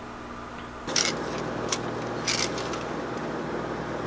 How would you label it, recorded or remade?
recorded